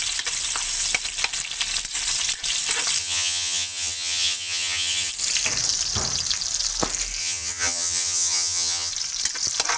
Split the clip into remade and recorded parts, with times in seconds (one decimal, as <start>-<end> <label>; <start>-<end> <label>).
0.0-3.0 recorded; 3.0-5.1 remade; 5.1-7.2 recorded; 7.2-8.9 remade; 8.9-9.8 recorded